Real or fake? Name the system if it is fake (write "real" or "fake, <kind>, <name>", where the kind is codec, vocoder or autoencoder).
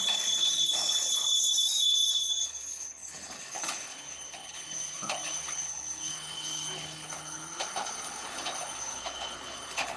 fake, codec, HILCodec